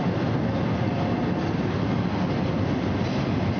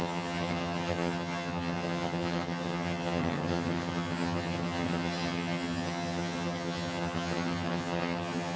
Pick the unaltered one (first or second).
first